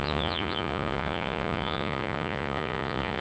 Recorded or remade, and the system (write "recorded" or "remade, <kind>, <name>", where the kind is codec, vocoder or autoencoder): remade, vocoder, Vocos